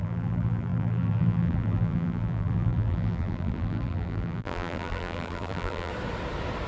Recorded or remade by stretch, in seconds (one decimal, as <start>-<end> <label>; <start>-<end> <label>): 0.0-5.9 remade; 5.9-6.7 recorded